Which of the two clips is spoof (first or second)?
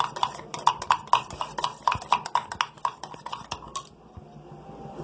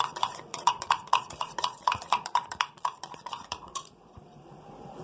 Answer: second